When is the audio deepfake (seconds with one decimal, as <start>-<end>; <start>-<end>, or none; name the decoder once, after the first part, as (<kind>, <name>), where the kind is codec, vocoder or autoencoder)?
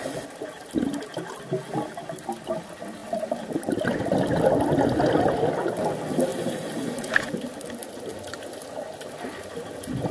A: 6.3-6.9 (vocoder, BigVGAN v2)